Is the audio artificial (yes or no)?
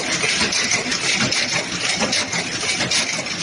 no